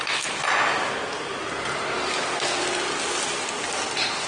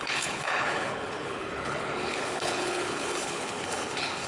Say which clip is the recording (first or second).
first